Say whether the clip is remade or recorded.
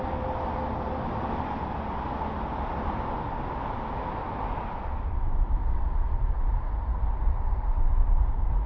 recorded